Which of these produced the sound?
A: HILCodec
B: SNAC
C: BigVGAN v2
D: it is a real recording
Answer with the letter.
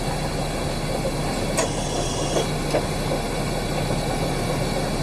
D